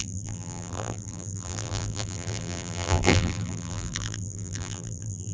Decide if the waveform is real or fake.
fake